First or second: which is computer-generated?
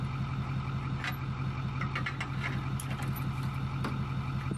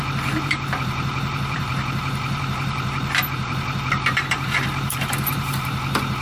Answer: second